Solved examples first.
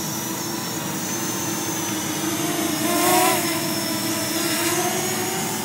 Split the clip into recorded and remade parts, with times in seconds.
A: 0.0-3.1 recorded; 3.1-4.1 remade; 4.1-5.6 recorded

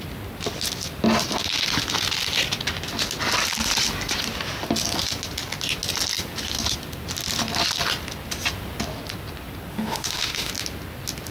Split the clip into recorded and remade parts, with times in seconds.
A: 0.0-9.7 recorded; 9.7-10.5 remade; 10.5-11.3 recorded